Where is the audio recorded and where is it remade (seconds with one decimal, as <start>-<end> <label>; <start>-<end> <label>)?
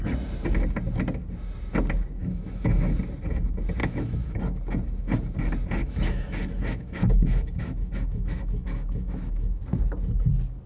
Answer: 0.0-2.2 recorded; 2.2-2.9 remade; 2.9-3.8 recorded; 3.8-4.4 remade; 4.4-5.8 recorded; 5.8-9.6 remade; 9.6-10.7 recorded